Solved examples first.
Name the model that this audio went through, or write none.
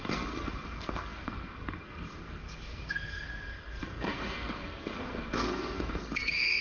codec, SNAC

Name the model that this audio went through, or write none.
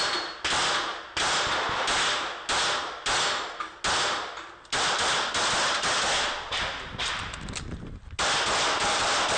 none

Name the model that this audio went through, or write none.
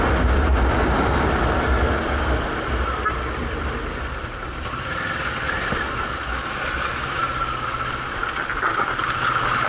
none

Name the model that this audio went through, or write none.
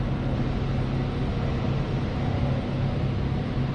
none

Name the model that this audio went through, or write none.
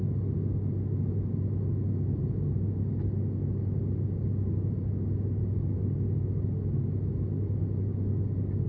none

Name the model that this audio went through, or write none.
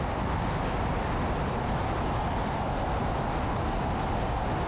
none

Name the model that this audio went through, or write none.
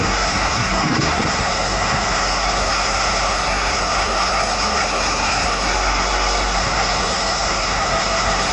codec, SNAC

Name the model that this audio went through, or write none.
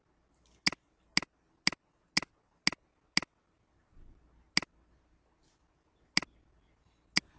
none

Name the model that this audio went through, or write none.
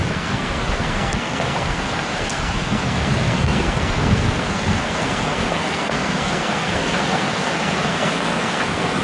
codec, SNAC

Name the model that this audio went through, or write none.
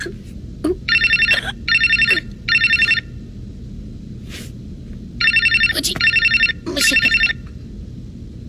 none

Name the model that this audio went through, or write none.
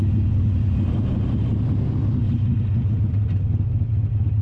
none